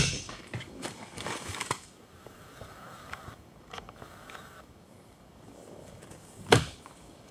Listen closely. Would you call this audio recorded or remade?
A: remade